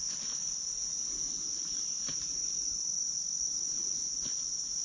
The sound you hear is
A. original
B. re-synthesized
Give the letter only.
A